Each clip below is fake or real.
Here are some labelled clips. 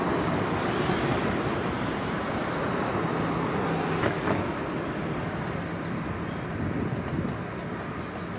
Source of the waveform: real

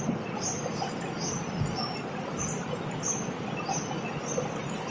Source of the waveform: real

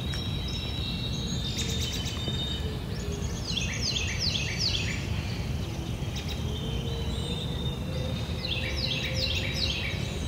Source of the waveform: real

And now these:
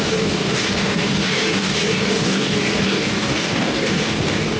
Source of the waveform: fake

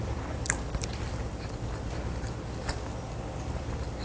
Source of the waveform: real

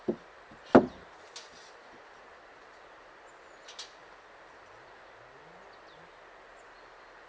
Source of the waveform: real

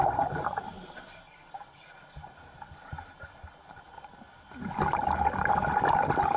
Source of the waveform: real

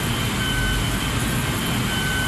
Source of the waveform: real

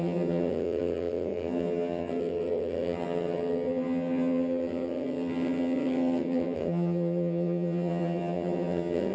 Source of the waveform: fake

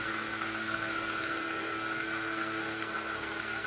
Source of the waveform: fake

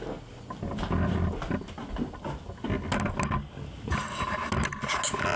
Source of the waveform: real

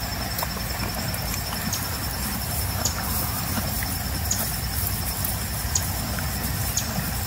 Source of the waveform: real